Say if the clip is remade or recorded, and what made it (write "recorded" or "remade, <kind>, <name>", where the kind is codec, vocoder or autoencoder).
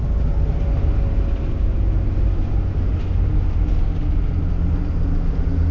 recorded